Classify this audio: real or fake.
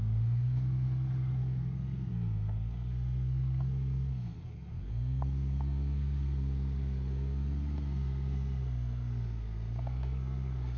fake